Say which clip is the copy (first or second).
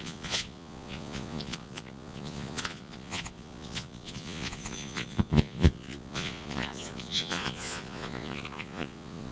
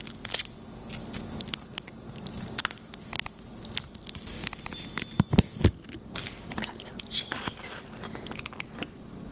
first